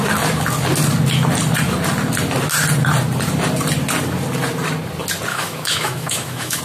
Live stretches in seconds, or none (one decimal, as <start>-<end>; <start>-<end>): 0.0-5.3